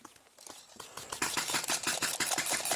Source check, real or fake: fake